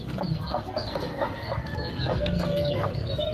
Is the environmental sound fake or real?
fake